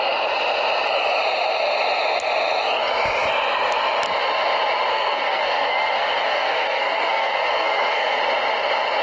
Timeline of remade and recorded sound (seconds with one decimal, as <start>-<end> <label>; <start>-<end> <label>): 0.0-4.9 recorded; 4.9-8.2 remade; 8.2-9.0 recorded